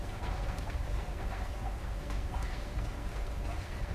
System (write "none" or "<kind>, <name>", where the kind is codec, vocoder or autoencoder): codec, SNAC